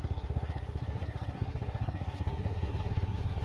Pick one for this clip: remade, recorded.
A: remade